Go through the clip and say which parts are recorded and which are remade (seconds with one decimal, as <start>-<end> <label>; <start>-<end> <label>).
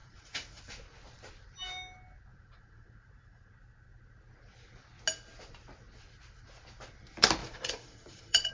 0.0-0.6 remade; 0.6-2.3 recorded; 2.3-3.5 remade; 3.5-7.4 recorded; 7.4-8.5 remade